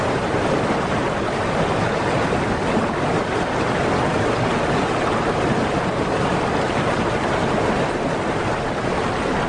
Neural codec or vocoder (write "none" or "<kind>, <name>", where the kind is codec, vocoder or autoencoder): none